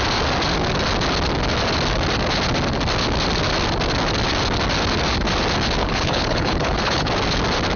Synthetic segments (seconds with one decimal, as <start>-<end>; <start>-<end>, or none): 5.8-7.1